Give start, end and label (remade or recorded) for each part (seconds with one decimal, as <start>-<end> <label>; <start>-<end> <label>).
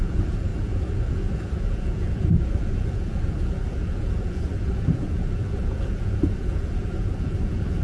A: 0.0-7.8 remade